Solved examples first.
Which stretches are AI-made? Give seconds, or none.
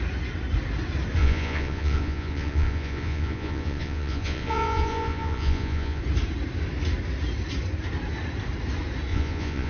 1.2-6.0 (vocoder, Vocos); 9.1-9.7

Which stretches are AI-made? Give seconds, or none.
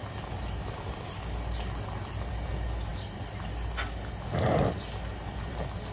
none